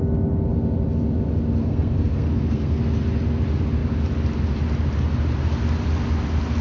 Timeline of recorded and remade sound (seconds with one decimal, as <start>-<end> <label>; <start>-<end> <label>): 0.0-1.6 recorded; 1.6-2.8 remade; 2.8-6.6 recorded